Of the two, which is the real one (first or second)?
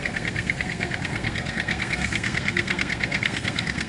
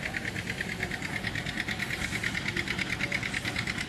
second